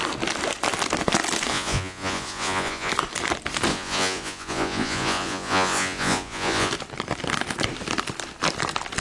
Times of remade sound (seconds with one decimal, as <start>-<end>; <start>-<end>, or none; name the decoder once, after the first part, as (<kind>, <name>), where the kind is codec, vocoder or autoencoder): 1.5-2.9 (vocoder, Vocos); 3.7-6.7